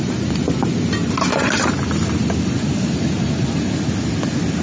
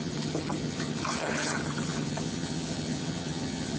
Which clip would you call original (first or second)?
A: first